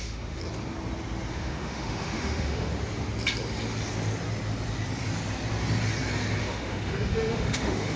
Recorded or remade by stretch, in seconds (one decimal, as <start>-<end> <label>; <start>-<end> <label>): 0.0-0.4 remade; 0.4-1.3 recorded; 1.3-2.7 remade; 2.7-6.4 recorded; 6.4-8.0 remade